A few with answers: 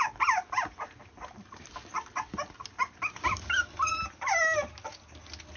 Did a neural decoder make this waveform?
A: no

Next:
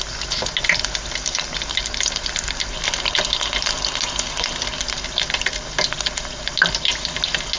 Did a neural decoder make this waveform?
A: no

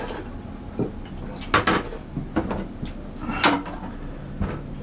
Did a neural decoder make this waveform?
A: no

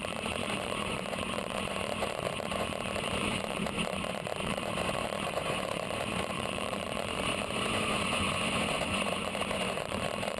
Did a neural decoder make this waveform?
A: yes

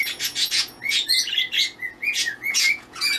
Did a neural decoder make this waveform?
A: yes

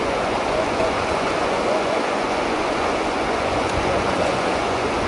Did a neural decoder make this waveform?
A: yes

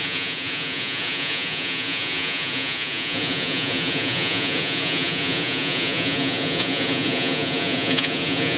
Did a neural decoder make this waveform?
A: yes